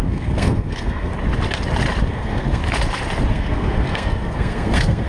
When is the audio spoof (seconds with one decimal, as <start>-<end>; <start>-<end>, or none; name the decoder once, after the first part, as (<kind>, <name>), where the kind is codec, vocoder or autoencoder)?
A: 0.0-1.1 (codec, SNAC); 2.1-2.6; 3.3-5.1

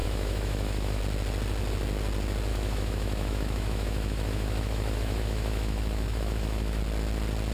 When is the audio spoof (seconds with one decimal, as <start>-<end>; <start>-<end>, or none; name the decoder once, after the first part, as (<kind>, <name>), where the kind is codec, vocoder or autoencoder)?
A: 0.0-1.0 (autoencoder, DAC-VAE); 2.5-6.8

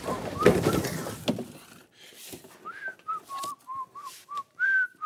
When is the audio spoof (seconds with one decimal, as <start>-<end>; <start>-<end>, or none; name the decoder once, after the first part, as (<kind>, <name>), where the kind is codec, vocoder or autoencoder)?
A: 0.0-0.8 (vocoder, BigVGAN v2); 3.9-5.1

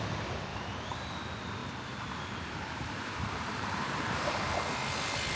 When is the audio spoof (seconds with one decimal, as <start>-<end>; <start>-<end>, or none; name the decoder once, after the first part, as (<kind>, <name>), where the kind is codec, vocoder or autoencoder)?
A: 0.5-1.1 (vocoder, BigVGAN v2); 1.6-4.4

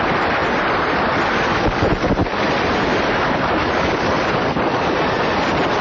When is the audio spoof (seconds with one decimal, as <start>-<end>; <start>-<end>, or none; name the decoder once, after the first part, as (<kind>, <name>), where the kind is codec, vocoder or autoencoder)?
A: none

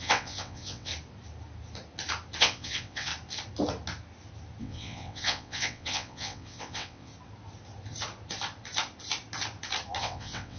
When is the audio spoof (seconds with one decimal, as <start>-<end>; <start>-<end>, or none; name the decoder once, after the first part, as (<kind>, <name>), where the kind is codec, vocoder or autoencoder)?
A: 0.0-0.9 (vocoder, WaveNeXt); 2.4-3.1; 4.6-7.1; 10.0-10.6

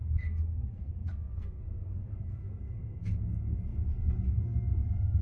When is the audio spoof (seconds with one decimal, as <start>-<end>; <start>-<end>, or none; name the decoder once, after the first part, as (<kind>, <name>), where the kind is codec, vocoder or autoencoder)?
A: 0.0-5.2 (codec, SNAC)

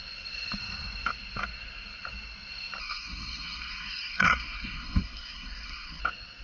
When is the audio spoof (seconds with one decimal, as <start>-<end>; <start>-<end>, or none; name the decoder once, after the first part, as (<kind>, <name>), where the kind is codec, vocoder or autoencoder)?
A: 2.8-6.0 (codec, SNAC)